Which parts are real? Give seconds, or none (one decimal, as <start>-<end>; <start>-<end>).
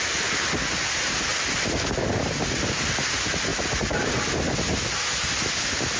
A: 0.0-6.0